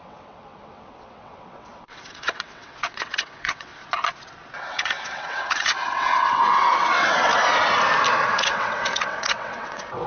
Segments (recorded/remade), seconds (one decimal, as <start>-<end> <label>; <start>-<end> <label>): 0.0-3.7 remade; 3.7-4.6 recorded; 4.6-7.3 remade; 7.3-8.3 recorded; 8.3-10.1 remade